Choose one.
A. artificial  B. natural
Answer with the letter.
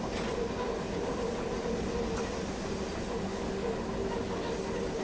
B